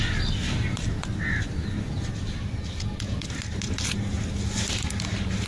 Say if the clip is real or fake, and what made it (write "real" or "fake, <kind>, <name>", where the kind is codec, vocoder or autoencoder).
real